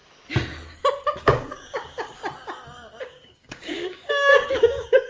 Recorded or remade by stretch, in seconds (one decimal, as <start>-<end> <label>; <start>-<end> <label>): 0.0-1.2 recorded; 1.2-2.2 remade; 2.2-3.0 recorded; 3.0-5.1 remade